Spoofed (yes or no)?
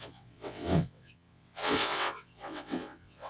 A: yes